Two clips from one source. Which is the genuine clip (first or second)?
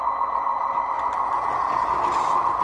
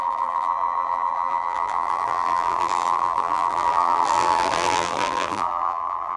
first